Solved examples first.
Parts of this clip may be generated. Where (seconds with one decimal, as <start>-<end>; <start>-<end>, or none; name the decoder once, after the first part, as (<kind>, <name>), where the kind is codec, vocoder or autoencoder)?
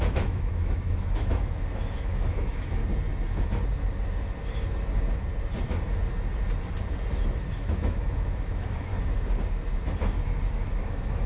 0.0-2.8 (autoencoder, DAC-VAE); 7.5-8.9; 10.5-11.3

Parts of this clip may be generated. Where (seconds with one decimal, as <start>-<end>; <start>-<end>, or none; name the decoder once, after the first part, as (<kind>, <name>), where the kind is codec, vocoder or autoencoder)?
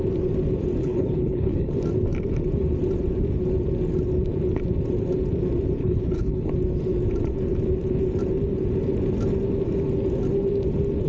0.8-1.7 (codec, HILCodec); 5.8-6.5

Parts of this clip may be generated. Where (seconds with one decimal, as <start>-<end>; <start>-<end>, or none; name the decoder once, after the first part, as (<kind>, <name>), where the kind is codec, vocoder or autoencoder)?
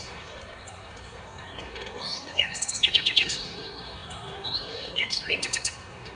0.0-6.2 (codec, SNAC)